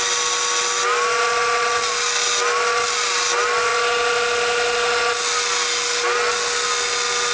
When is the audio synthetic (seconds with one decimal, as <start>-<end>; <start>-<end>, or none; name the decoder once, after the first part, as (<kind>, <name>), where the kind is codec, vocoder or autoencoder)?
none